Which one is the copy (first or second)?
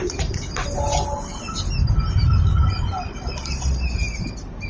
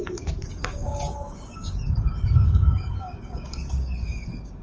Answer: second